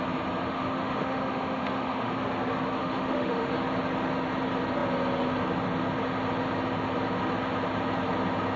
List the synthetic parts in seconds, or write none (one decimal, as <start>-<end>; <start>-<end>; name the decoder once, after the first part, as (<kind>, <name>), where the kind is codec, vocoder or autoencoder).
0.4-2.1 (autoencoder, DAC-VAE); 2.8-3.5